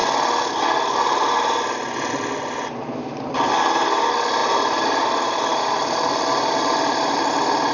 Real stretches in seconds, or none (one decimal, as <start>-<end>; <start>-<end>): 0.0-4.4; 6.1-7.7